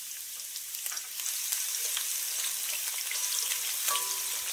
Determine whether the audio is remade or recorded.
recorded